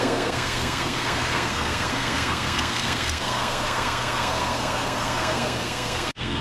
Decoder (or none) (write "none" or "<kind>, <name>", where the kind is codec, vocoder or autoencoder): codec, SNAC